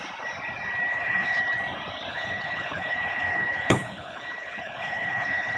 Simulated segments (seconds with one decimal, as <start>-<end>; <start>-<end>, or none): 0.9-1.4; 2.1-5.6